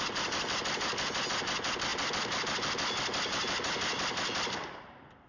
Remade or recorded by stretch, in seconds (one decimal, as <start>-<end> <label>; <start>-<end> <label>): 0.0-5.3 recorded